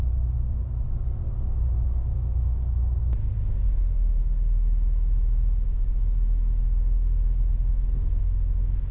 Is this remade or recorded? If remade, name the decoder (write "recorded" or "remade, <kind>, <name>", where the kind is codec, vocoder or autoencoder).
recorded